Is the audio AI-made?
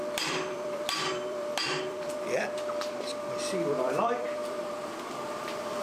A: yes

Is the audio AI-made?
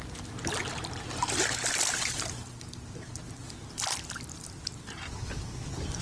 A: no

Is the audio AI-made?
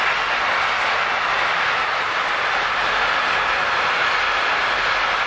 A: no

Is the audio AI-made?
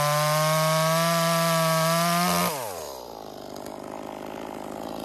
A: no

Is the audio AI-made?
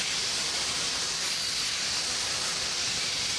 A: yes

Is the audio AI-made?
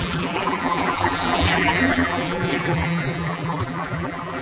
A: yes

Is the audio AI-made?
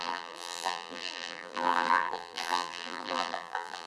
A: yes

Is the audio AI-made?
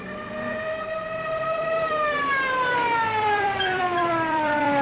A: yes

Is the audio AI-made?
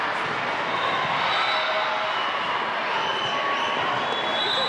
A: no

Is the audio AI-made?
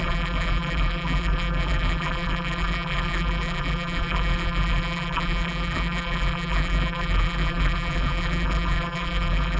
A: yes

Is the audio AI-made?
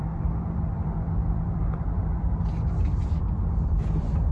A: yes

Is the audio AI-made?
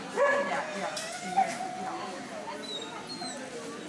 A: no